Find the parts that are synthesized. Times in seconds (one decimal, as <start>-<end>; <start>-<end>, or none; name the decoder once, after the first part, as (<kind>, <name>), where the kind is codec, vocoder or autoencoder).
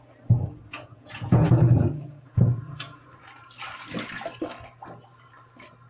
0.7-3.2 (vocoder, Vocos)